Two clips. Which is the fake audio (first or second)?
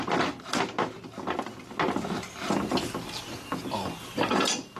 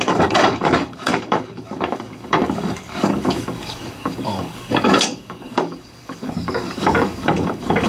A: second